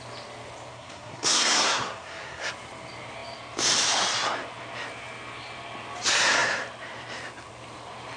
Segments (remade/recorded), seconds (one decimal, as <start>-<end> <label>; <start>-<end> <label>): 0.0-0.7 recorded; 0.7-2.5 remade; 2.5-8.2 recorded